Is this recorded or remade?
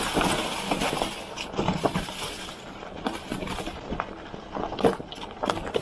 recorded